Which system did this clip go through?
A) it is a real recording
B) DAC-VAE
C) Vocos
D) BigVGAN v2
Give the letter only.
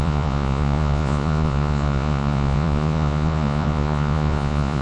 C